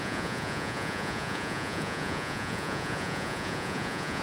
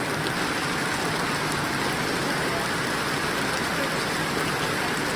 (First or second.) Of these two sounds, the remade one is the first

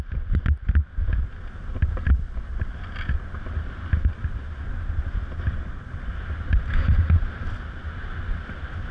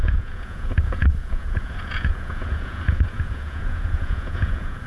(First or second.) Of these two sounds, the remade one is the second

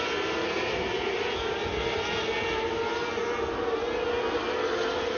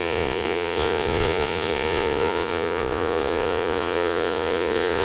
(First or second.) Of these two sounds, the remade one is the second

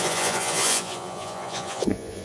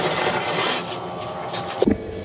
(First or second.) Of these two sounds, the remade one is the first